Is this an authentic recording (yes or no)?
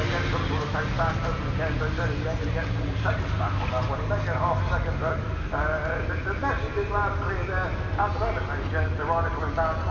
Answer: yes